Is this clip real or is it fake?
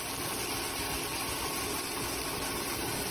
real